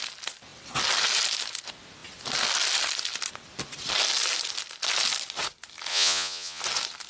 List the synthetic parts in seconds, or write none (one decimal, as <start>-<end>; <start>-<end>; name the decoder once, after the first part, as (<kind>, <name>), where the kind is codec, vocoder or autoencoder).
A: 5.9-6.6 (vocoder, Vocos)